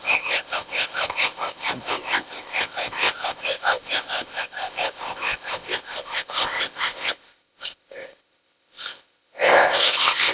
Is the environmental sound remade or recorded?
remade